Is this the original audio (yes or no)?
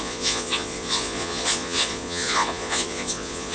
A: no